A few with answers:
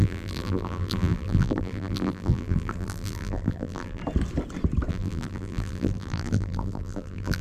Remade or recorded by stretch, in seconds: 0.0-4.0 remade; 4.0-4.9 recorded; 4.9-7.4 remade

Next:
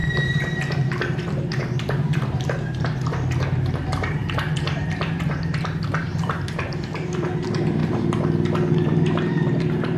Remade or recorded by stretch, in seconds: 0.0-7.8 remade; 7.8-8.7 recorded; 8.7-10.0 remade